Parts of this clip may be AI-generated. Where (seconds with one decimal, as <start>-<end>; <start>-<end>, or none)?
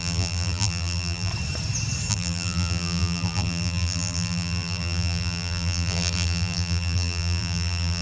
0.0-1.3; 2.1-8.0